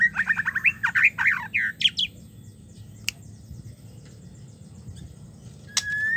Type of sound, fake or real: real